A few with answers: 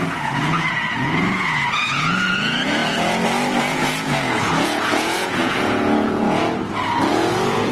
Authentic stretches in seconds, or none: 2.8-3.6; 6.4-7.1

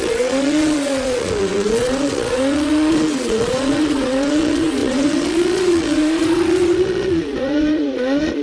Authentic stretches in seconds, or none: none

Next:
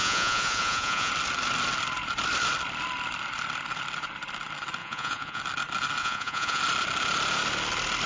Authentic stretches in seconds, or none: 1.1-4.8; 5.4-6.0; 6.6-8.1